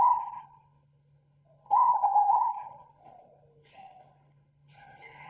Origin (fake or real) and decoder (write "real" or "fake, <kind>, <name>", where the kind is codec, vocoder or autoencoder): fake, codec, HILCodec